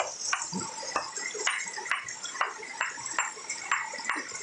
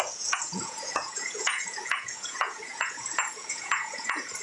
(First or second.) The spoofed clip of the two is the second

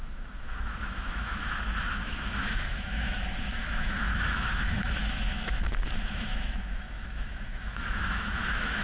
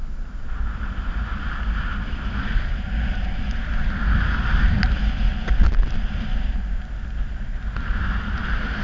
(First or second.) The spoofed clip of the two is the first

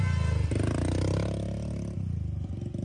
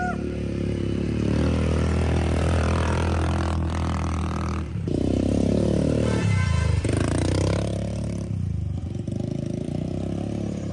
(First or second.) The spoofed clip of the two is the second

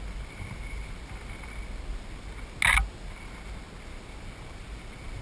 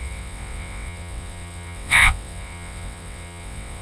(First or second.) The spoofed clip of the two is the second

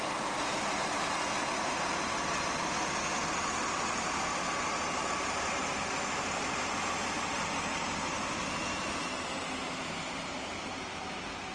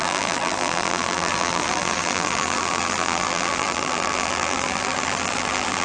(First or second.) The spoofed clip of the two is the second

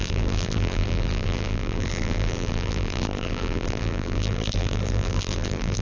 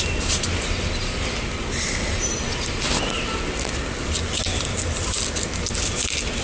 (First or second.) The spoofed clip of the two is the first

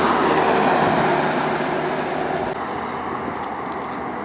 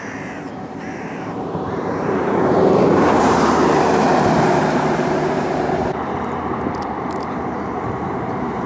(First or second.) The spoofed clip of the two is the second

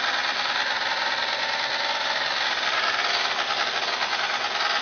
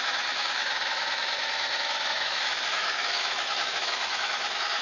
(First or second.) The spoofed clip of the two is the second